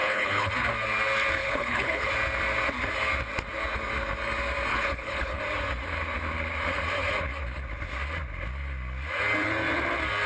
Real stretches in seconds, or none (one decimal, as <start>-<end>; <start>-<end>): 0.5-1.4; 2.1-4.7; 5.4-10.3

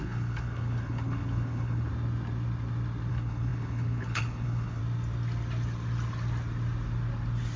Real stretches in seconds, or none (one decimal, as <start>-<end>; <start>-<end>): 1.9-3.1; 4.8-7.6